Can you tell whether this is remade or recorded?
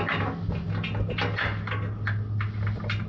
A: recorded